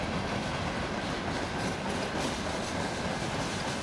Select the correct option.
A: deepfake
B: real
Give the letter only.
B